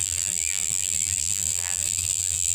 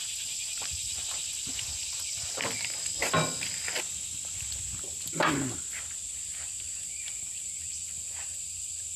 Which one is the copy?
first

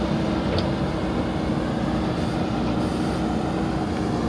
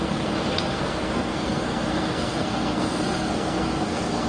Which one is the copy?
second